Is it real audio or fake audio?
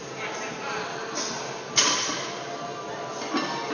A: real